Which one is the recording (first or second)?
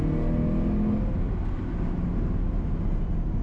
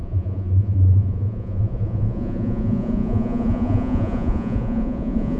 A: first